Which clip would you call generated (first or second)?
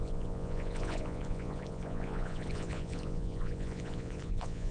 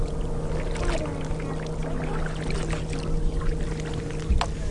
first